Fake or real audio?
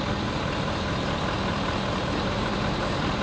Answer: real